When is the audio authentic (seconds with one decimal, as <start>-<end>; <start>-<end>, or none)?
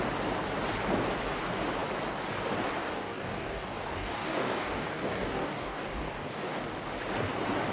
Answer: 0.0-2.8; 6.6-7.7